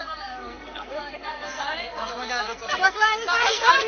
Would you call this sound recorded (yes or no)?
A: no